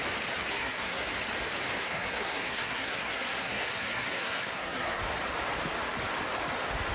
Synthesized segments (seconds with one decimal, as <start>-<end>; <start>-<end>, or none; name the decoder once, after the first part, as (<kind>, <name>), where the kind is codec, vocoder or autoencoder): 0.5-1.1 (codec, SNAC); 1.8-5.0